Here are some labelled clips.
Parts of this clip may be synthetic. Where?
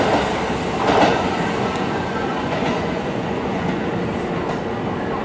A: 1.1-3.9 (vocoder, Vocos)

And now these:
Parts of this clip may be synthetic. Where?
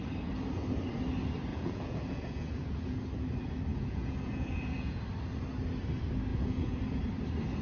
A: 1.5-3.0 (vocoder, Vocos); 3.7-5.0; 6.3-7.0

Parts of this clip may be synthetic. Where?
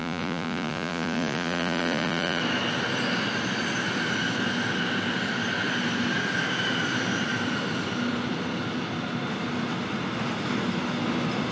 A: 0.0-2.4 (vocoder, Vocos)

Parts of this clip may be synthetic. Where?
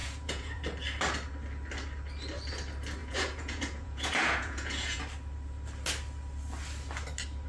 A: 0.0-0.6 (vocoder, Vocos); 3.0-5.0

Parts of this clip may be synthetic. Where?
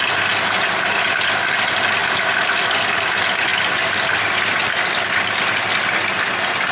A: none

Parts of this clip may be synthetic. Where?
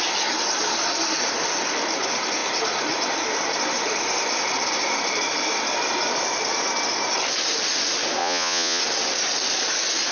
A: 8.2-8.8 (vocoder, Vocos)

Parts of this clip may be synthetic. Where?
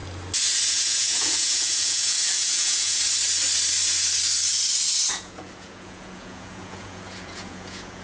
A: 0.7-3.0 (vocoder, Vocos); 5.1-8.0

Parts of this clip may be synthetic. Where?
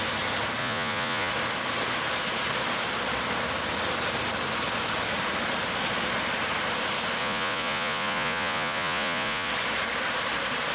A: 0.6-1.3 (vocoder, Vocos); 7.2-9.5